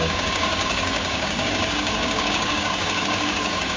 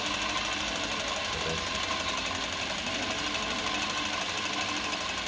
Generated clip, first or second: first